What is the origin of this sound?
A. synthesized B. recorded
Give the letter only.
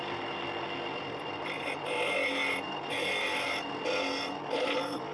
B